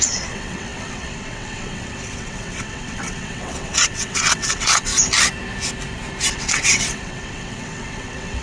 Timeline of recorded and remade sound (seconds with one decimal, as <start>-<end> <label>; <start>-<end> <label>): 0.0-4.9 remade; 4.9-6.3 recorded; 6.3-8.4 remade